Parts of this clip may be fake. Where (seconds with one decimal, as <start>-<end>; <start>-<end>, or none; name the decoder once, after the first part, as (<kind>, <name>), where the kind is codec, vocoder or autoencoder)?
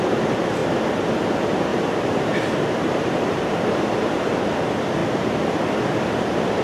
1.7-4.3 (vocoder, BigVGAN v2); 5.0-5.7